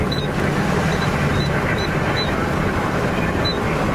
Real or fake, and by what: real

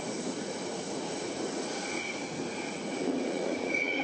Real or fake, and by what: fake, vocoder, Vocos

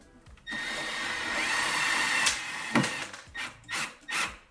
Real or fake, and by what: fake, vocoder, BigVGAN v2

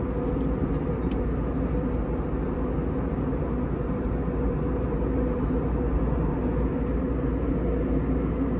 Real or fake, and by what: real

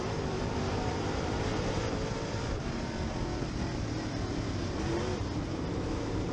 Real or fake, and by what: fake, vocoder, BigVGAN v2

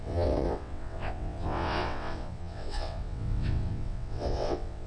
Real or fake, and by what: fake, vocoder, WaveNeXt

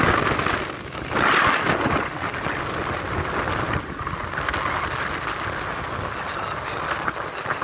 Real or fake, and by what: real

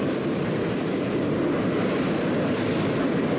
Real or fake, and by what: real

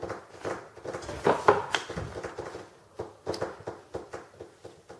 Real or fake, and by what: real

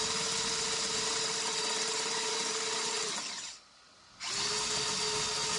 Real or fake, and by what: real